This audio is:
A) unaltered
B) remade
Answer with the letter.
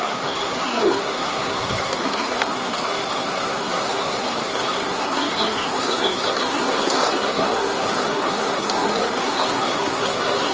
B